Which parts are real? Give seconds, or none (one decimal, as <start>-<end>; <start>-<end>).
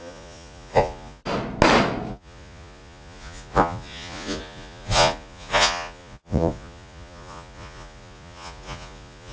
1.2-2.1